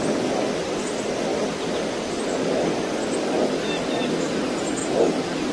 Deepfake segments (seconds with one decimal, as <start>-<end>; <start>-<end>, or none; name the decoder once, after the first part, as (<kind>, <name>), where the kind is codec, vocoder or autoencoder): none